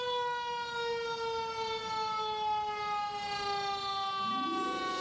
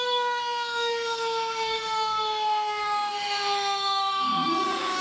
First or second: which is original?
first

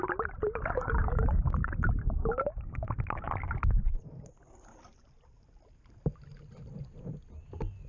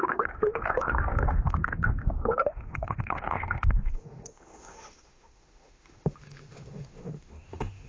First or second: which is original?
first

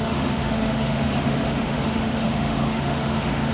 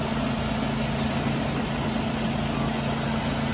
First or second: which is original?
second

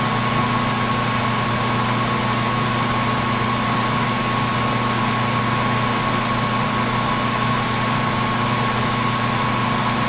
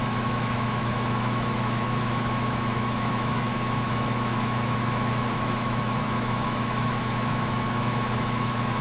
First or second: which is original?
first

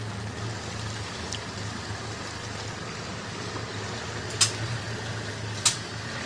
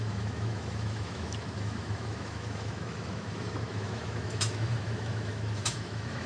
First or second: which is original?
first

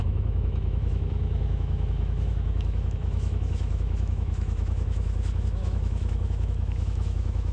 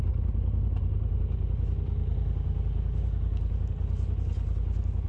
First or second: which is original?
second